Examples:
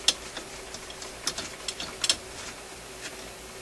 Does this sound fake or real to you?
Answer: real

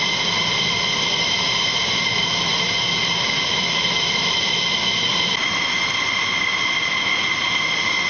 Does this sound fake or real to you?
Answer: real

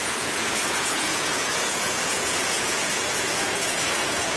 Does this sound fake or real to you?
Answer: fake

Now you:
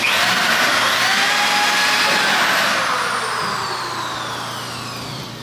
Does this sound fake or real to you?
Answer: real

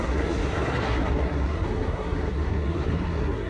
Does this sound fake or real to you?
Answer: fake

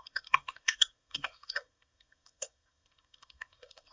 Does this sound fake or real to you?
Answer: fake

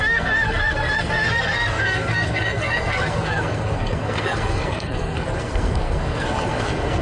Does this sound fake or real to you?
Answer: fake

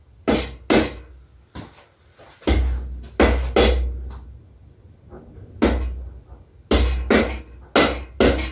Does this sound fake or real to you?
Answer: real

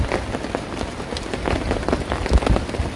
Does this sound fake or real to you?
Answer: real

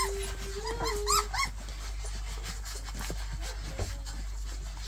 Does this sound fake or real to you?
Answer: real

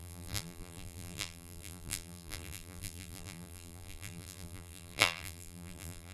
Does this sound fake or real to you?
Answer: fake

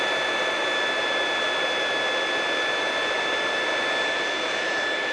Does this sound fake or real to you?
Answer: real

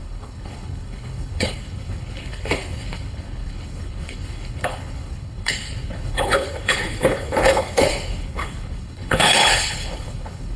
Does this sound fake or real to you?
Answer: fake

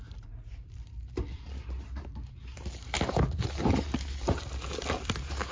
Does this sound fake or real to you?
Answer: fake